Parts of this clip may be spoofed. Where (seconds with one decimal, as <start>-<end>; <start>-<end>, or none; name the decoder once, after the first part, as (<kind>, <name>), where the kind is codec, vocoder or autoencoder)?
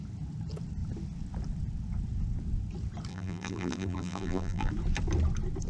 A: 3.1-4.7 (vocoder, BigVGAN v2)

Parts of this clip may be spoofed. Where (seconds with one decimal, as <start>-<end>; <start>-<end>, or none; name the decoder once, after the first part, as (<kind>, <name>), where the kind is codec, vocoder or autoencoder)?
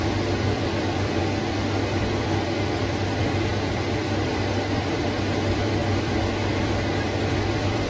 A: 0.0-1.2 (vocoder, BigVGAN v2); 2.2-7.9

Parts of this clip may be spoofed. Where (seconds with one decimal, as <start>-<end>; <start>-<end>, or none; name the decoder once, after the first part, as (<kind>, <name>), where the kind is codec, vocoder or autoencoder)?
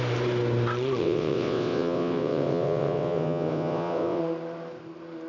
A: 1.0-4.2 (vocoder, WaveNeXt)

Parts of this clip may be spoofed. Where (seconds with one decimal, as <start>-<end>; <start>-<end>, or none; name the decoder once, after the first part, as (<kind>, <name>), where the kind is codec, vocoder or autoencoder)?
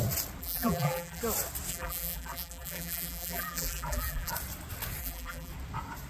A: 0.4-1.2 (vocoder, BigVGAN v2); 1.7-4.3; 5.0-5.5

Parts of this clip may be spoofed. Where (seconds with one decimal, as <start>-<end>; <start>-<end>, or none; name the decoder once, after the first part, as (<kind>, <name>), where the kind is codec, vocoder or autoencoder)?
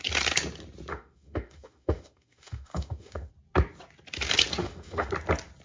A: 0.9-3.3 (autoencoder, DAC-VAE); 4.6-5.1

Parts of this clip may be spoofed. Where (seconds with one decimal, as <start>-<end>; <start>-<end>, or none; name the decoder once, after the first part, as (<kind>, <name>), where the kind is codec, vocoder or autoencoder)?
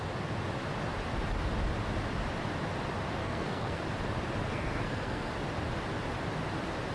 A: 3.2-3.8 (codec, SNAC); 4.5-5.3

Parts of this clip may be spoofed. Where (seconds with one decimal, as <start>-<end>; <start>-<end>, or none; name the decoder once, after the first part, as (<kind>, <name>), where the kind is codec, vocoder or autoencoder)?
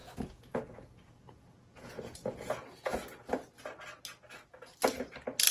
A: 0.0-3.3 (vocoder, Vocos)